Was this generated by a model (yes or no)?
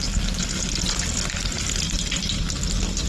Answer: no